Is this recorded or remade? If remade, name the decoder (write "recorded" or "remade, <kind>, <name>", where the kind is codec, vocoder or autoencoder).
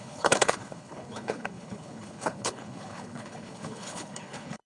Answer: remade, codec, HILCodec